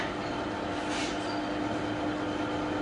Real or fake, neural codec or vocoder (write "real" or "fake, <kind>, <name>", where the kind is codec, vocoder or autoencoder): real